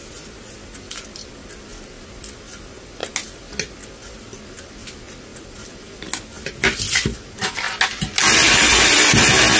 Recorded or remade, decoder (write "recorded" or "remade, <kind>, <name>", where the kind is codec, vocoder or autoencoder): recorded